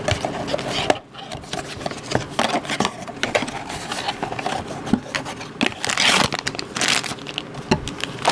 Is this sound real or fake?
real